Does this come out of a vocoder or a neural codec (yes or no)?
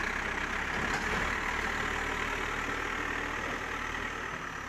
no